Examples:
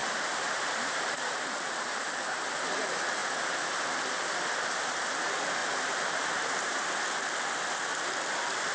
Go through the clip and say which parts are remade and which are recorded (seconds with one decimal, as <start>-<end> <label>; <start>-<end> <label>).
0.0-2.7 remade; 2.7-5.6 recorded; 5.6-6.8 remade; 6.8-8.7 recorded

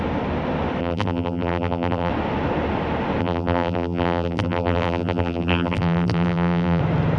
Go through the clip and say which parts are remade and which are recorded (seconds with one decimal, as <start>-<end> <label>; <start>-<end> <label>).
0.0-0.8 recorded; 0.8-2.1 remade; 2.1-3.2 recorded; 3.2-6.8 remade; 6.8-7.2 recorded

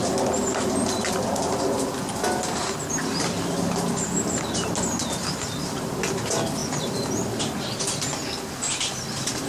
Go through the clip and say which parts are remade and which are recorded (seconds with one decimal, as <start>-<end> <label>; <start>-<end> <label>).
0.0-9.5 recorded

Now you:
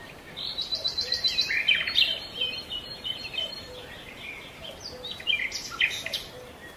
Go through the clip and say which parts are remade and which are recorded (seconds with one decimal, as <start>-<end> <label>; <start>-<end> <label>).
0.0-0.5 recorded; 0.5-2.5 remade; 2.5-6.8 recorded

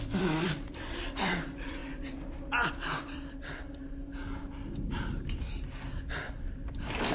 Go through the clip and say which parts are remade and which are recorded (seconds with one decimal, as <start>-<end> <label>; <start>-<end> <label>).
0.0-1.8 remade; 1.8-2.7 recorded; 2.7-3.8 remade; 3.8-6.1 recorded; 6.1-7.1 remade